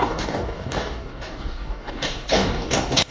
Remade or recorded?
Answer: remade